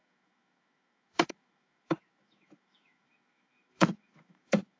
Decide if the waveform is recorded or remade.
remade